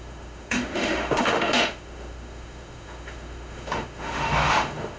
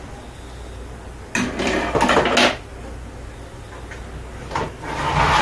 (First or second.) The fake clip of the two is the first